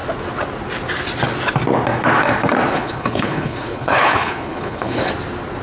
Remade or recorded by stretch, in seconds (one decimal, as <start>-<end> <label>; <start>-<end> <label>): 0.0-2.7 recorded; 2.7-5.1 remade; 5.1-5.6 recorded